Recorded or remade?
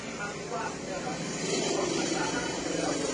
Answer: remade